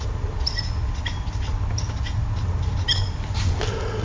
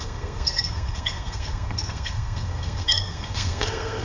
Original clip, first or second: first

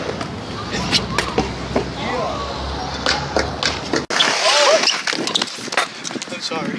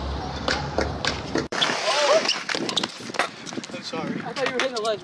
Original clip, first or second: first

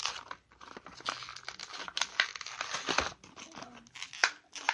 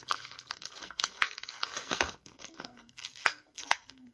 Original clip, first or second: first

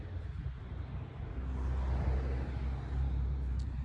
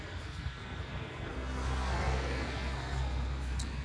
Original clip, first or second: first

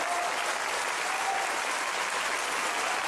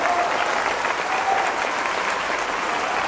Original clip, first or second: first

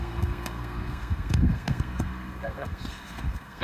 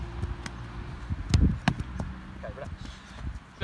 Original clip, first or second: second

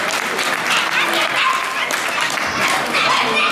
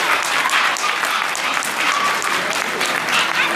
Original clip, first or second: first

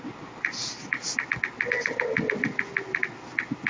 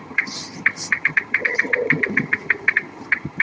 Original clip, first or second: first